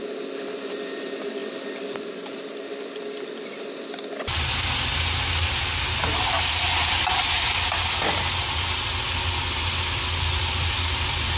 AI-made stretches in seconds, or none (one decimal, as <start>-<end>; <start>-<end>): none